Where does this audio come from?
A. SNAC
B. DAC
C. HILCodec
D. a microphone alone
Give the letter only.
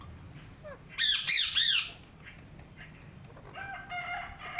D